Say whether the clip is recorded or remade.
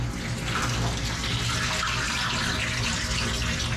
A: recorded